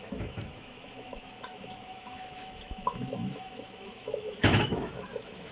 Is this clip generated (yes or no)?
yes